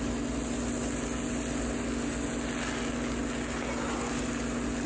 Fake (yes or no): no